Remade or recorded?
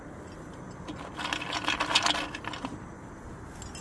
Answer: recorded